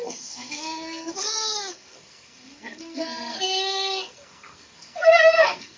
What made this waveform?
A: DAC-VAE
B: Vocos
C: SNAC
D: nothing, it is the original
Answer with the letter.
C